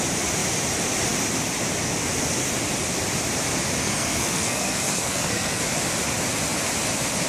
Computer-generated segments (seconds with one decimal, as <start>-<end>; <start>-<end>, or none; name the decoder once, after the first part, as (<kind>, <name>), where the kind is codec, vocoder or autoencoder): 3.8-5.6 (codec, SNAC)